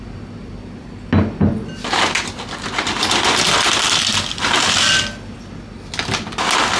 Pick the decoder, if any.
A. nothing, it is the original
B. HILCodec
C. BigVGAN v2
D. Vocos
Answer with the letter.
A